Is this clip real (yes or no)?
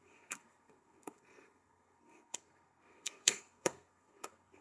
no